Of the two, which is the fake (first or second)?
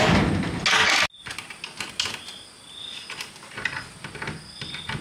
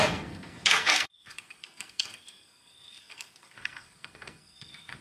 second